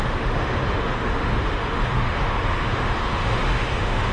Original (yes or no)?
no